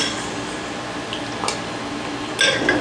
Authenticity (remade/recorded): recorded